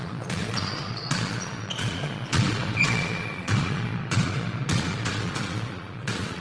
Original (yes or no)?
no